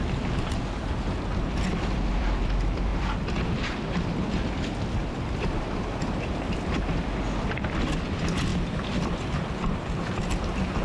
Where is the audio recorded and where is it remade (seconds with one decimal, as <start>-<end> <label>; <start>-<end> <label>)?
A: 0.0-2.9 remade; 2.9-7.4 recorded; 7.4-10.8 remade